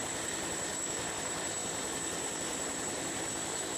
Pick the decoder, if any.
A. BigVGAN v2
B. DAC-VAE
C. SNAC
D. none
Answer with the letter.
A